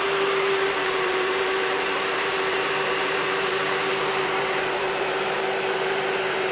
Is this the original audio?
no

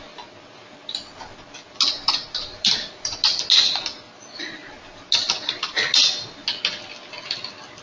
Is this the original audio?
yes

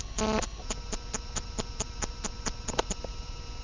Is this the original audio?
no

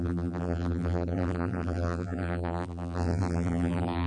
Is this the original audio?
no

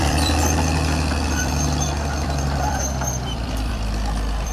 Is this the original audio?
no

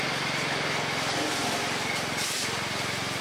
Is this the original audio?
yes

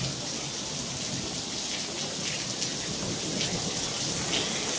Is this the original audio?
yes